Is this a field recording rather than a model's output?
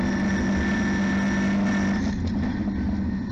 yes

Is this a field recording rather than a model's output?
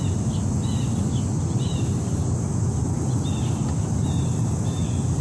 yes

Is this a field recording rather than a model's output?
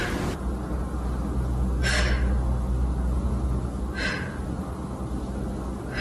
yes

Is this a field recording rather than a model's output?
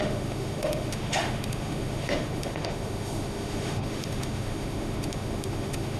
no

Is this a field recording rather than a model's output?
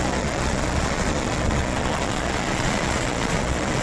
no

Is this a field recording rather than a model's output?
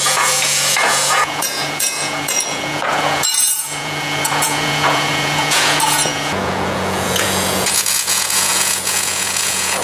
no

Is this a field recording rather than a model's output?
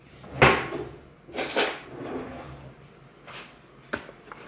yes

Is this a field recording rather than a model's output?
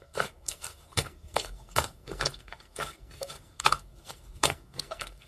no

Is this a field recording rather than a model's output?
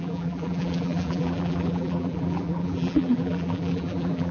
no